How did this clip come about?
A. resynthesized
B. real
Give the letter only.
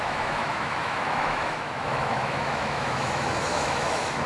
A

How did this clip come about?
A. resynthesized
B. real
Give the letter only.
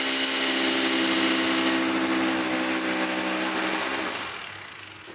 B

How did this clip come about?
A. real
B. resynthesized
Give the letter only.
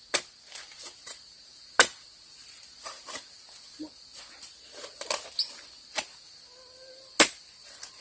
A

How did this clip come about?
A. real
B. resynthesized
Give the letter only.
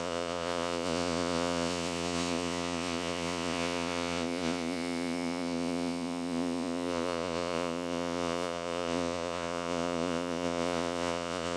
B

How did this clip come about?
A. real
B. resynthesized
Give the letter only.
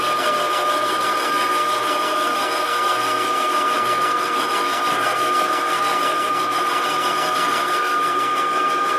B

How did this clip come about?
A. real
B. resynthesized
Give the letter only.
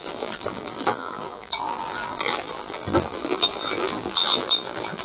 B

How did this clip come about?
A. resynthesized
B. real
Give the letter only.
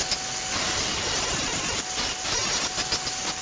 B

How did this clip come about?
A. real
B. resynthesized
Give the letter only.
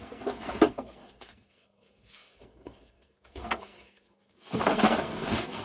B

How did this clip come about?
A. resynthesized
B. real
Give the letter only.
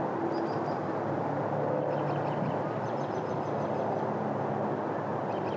B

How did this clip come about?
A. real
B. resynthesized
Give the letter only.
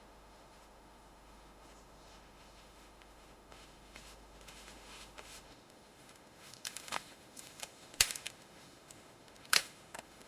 B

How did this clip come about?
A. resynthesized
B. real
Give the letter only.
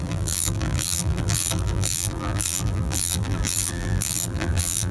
A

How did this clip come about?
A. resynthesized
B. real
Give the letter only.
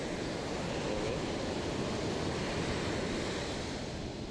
B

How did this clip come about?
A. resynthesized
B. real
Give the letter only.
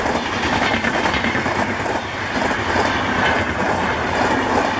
A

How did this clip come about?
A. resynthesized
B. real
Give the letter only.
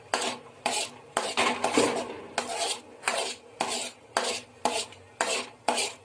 B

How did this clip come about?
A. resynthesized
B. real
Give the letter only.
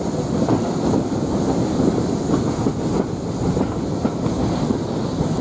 B